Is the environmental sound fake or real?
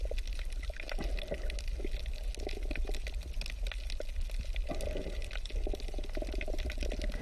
real